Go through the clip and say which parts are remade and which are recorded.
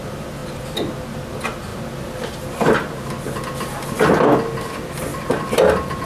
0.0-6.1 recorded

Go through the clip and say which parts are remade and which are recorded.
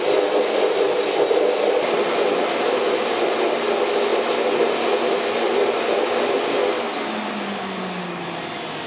0.0-8.9 recorded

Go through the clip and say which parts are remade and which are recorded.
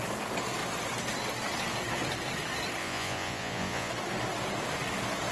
0.0-2.8 recorded; 2.8-3.9 remade; 3.9-5.3 recorded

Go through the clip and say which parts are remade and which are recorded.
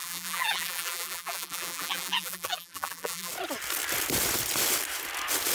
0.0-3.3 remade; 3.3-5.5 recorded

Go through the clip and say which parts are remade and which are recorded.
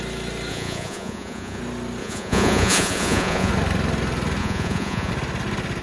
0.0-0.5 recorded; 0.5-1.6 remade; 1.6-2.0 recorded; 2.0-3.5 remade; 3.5-4.4 recorded; 4.4-5.1 remade; 5.1-5.8 recorded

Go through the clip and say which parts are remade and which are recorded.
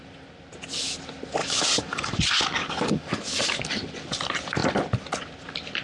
0.0-1.4 recorded; 1.4-2.2 remade; 2.2-2.6 recorded; 2.6-3.6 remade; 3.6-5.8 recorded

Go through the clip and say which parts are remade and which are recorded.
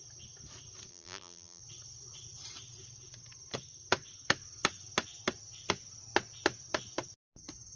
0.0-0.9 recorded; 0.9-1.6 remade; 1.6-7.8 recorded